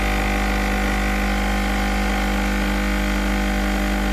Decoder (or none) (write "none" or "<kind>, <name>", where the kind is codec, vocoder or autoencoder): none